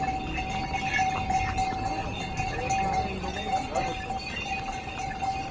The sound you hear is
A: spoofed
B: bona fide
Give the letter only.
B